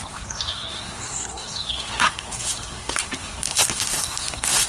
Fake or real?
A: fake